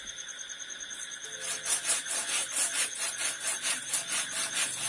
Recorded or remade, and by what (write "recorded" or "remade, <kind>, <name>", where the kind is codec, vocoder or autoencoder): recorded